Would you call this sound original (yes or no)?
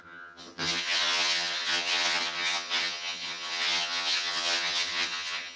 no